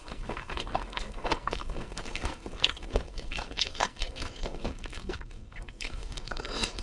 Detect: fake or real fake